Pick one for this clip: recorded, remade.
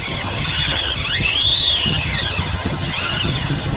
remade